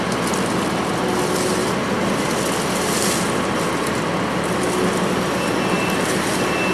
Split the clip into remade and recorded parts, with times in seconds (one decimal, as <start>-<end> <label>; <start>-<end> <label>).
0.0-6.7 recorded